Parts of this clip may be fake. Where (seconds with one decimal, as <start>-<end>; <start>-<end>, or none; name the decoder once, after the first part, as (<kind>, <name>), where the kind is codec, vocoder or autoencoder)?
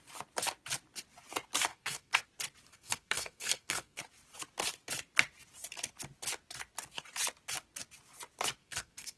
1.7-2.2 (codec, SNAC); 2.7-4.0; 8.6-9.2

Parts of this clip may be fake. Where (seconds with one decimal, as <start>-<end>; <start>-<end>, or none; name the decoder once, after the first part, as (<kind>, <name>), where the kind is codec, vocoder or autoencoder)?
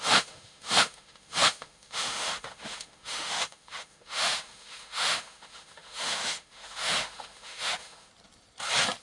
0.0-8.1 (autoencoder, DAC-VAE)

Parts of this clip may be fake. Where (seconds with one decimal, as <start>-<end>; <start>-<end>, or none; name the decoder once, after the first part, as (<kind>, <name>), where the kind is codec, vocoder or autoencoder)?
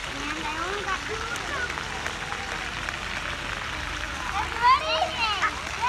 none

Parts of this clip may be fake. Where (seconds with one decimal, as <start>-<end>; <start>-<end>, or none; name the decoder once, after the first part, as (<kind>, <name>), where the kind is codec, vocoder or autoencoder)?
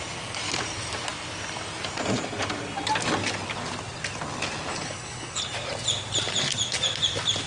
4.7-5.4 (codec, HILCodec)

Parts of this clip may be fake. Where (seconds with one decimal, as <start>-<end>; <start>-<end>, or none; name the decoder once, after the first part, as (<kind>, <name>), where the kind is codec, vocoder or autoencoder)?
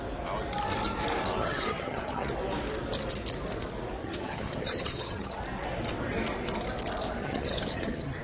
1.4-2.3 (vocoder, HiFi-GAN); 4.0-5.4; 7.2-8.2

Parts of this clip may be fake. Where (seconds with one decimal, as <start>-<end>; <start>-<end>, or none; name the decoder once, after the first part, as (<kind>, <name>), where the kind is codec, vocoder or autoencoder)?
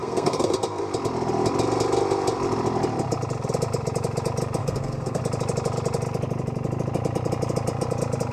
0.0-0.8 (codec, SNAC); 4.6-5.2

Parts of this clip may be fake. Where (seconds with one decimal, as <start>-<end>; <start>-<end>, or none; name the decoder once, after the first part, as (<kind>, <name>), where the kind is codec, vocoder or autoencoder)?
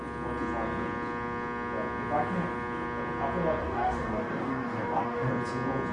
3.6-5.3 (codec, DAC)